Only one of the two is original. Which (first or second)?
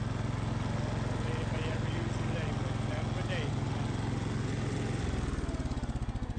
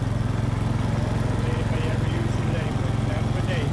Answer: first